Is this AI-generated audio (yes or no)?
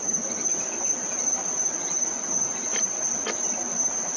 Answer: no